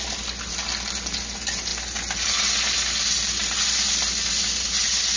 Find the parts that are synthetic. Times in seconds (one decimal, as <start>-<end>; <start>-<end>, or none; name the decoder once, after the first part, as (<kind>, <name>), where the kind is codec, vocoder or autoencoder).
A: none